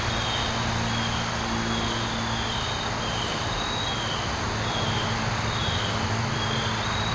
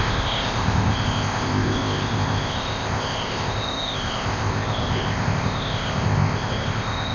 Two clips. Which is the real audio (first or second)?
first